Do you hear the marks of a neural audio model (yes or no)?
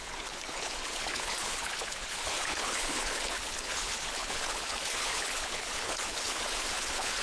yes